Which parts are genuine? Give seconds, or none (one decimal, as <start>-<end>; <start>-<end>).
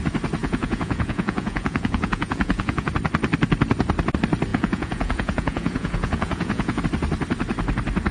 0.0-0.4; 2.9-4.5; 6.8-8.1